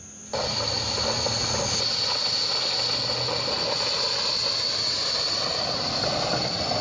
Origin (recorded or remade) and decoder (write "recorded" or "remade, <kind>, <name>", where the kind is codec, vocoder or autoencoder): recorded